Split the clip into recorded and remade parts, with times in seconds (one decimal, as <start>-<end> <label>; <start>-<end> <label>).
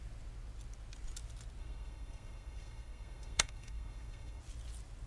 0.0-1.6 recorded; 1.6-4.4 remade; 4.4-5.1 recorded